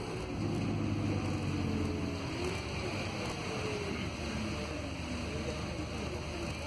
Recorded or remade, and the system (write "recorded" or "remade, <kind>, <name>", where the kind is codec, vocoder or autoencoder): recorded